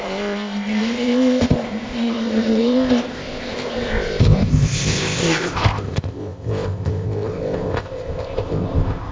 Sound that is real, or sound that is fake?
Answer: fake